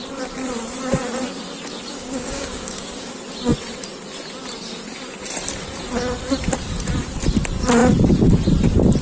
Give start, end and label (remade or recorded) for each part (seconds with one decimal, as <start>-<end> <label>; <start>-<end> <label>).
0.0-1.9 recorded; 1.9-3.1 remade; 3.1-9.0 recorded